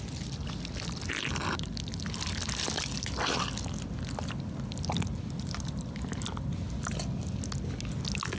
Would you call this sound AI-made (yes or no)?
no